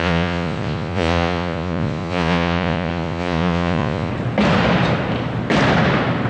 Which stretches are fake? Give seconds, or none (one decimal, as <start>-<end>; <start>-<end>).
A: 0.0-4.1